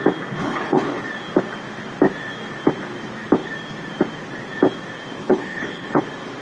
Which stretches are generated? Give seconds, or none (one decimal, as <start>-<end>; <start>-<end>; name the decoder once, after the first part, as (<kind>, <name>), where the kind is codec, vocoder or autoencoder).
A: 0.4-1.0 (codec, HILCodec); 5.2-6.0